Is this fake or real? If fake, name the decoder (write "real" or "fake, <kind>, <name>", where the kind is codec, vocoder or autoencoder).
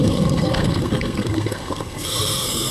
fake, codec, SNAC